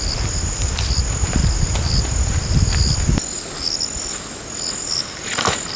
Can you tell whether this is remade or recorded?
recorded